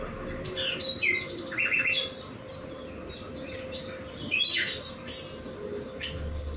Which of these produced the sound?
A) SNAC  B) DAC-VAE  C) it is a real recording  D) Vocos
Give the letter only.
C